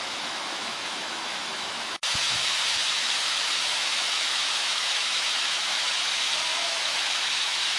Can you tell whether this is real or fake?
fake